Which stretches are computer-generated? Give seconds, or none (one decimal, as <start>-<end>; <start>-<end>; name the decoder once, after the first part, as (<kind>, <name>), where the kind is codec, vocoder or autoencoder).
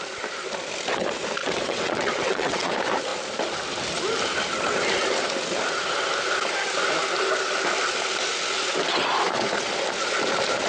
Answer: 1.4-2.7 (vocoder, WaveNeXt)